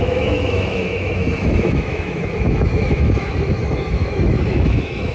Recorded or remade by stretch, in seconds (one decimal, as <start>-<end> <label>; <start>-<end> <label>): 0.0-5.1 remade